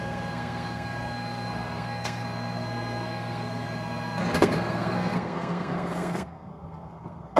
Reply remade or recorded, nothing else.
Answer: remade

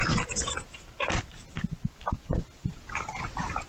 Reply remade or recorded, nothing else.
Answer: recorded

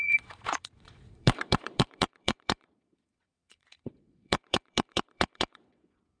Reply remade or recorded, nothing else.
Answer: remade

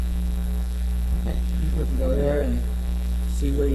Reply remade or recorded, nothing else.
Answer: remade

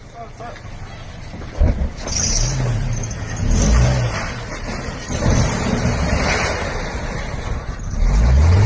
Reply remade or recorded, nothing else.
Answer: recorded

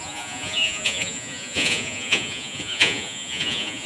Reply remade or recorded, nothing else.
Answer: remade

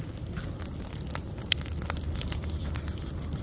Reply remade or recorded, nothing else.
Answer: recorded